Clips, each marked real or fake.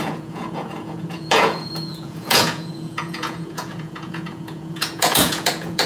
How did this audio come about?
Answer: fake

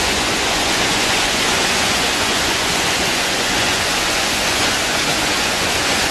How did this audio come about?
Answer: fake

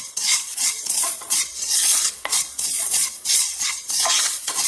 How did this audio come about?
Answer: fake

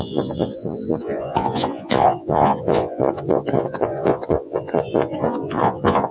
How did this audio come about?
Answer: fake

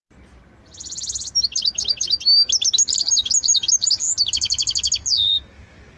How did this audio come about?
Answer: real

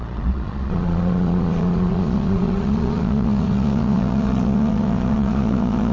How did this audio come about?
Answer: fake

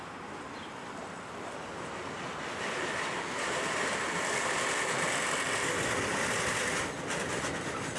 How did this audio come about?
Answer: real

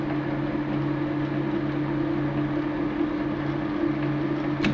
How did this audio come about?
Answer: real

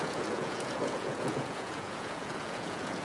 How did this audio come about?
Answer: fake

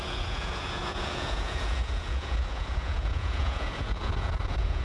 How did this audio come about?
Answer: fake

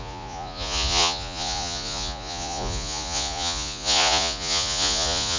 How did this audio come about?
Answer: fake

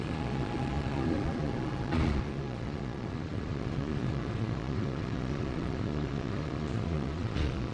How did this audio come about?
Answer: fake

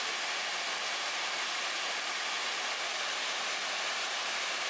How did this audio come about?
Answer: real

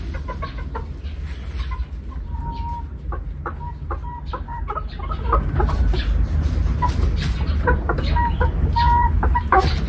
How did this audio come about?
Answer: real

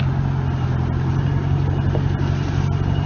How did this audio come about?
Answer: real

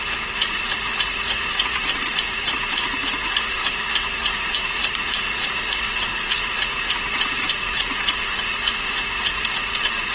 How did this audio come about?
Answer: fake